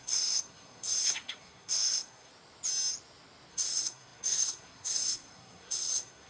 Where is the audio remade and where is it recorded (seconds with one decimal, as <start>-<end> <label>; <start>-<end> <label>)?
0.0-2.3 remade; 2.3-3.5 recorded; 3.5-6.3 remade